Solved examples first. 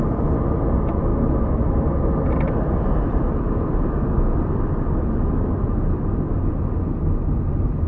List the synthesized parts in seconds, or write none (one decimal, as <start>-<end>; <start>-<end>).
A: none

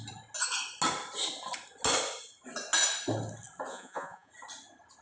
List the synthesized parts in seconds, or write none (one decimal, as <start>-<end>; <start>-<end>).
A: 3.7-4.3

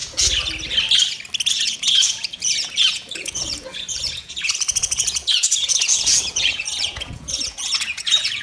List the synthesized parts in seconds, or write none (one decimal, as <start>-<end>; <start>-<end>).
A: 1.5-8.4